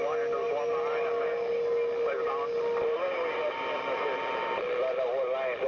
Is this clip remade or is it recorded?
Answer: recorded